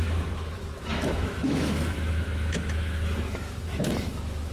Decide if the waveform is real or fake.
fake